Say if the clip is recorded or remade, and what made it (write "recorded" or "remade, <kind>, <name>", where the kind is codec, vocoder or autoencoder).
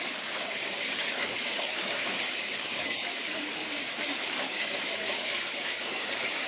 remade, codec, DAC